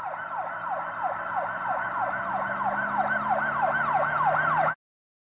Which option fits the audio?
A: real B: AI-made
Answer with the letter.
A